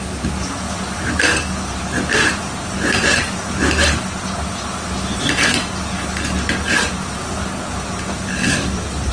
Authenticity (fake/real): real